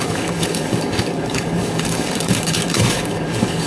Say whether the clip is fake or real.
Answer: fake